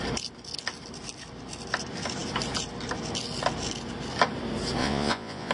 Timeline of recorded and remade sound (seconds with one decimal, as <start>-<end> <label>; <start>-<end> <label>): 0.0-4.8 recorded; 4.8-5.5 remade